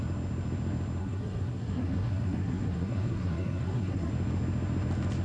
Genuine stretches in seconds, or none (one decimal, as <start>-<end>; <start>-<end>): 0.0-1.0; 4.1-5.2